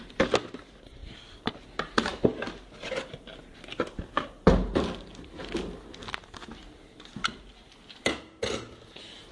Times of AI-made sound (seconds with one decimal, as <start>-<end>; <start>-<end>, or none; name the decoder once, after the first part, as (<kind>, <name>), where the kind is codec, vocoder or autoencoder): none